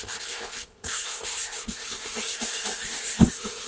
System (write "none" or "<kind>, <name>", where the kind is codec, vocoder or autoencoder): codec, ZipCodec